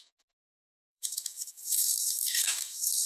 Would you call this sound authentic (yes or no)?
no